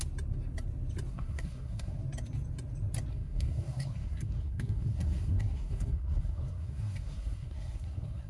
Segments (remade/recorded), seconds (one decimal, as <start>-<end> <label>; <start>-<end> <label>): 0.0-1.1 recorded; 1.1-2.0 remade; 2.0-3.1 recorded; 3.1-8.3 remade